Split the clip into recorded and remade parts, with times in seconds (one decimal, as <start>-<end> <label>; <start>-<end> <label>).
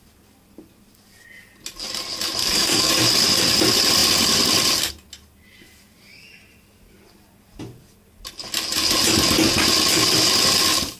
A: 0.0-2.4 recorded; 2.4-2.9 remade; 2.9-11.0 recorded